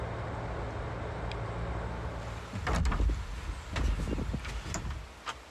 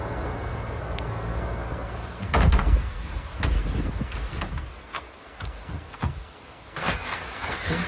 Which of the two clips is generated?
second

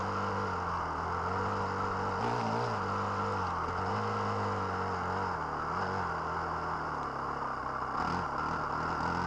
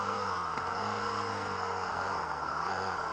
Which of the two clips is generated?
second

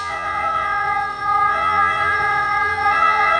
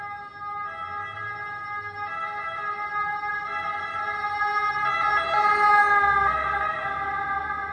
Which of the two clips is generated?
first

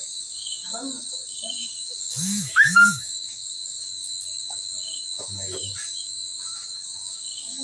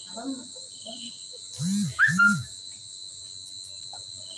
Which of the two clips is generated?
first